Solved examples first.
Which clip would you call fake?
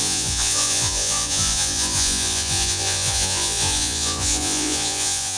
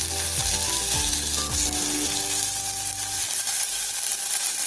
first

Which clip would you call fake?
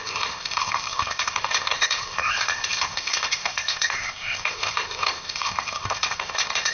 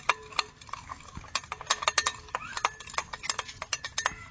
first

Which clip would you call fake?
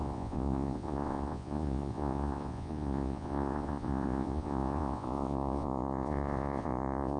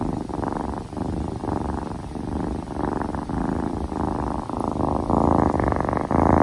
first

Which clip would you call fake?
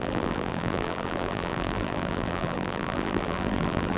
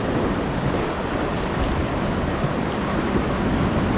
first